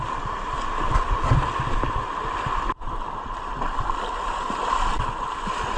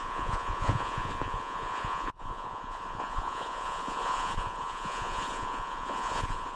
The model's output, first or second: second